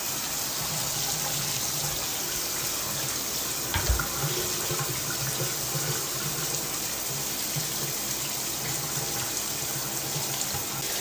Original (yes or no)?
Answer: yes